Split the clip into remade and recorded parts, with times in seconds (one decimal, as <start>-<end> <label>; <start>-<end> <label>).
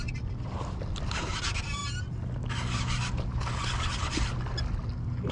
0.0-5.3 recorded